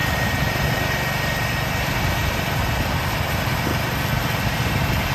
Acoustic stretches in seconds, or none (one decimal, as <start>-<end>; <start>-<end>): 3.7-4.5